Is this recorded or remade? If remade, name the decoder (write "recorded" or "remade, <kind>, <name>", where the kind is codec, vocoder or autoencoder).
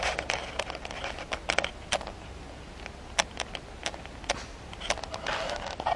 recorded